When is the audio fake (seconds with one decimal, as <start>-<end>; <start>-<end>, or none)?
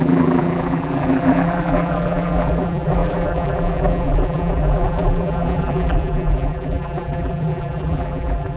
0.0-8.6